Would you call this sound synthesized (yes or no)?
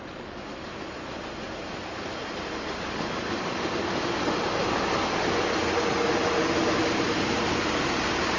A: no